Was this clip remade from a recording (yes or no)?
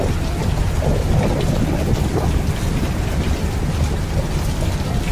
no